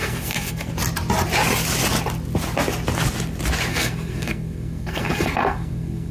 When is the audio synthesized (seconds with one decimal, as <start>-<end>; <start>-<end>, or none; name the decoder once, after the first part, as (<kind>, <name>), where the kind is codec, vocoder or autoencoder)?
0.0-0.7 (codec, SNAC); 3.7-6.1